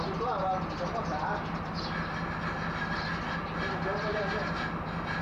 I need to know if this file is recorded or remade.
recorded